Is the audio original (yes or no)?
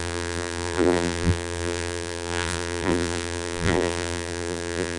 no